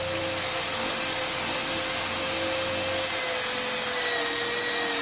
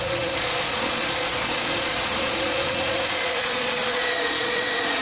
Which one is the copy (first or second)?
second